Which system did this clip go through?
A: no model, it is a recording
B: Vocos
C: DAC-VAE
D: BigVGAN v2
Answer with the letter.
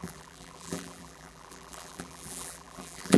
D